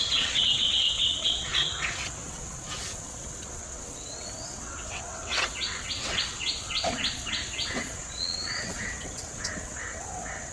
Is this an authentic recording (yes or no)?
no